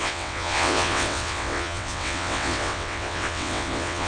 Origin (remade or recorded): remade